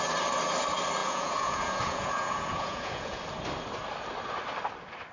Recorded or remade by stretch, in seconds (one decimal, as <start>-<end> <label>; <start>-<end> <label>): 0.0-1.0 recorded; 1.0-3.2 remade; 3.2-5.1 recorded